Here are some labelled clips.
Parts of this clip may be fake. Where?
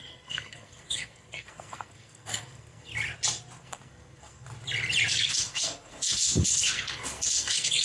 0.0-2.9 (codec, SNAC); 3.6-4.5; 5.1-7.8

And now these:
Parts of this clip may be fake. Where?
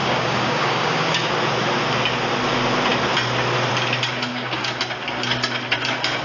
0.0-1.3 (codec, DAC); 4.3-4.8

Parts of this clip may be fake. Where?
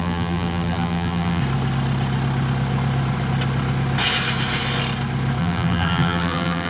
0.0-1.4 (vocoder, BigVGAN v2); 5.4-6.7